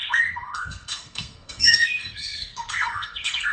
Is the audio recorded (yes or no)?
no